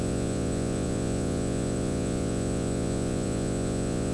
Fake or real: fake